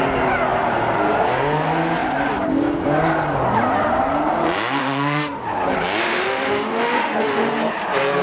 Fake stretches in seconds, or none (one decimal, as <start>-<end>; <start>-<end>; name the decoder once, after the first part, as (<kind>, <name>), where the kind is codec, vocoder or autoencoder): 4.8-5.4 (autoencoder, DAC-VAE); 6.0-7.5